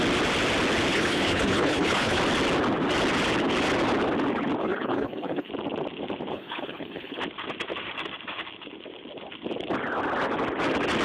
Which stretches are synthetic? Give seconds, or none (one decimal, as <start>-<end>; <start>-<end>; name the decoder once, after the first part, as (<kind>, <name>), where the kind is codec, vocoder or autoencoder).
0.9-2.2 (codec, HILCodec); 4.6-5.5; 6.3-7.2